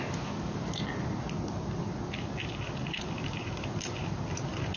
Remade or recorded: recorded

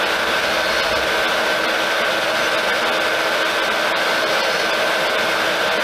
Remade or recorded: recorded